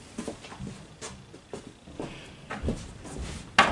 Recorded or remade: recorded